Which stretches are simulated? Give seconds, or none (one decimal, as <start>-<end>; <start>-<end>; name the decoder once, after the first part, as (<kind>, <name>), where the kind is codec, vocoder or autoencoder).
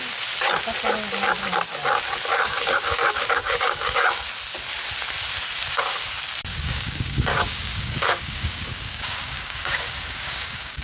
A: 2.3-4.2 (codec, DAC); 6.5-10.8